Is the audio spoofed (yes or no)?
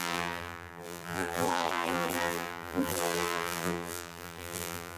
yes